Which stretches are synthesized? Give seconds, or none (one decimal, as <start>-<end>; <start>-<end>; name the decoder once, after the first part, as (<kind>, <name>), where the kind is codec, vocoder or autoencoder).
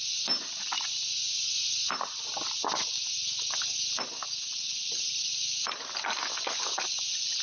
none